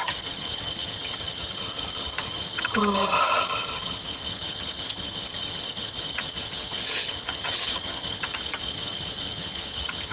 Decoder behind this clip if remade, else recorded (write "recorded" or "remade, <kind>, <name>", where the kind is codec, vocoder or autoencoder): remade, vocoder, HiFi-GAN